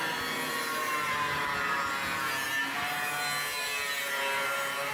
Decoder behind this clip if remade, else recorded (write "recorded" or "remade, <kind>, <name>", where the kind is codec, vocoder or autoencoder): recorded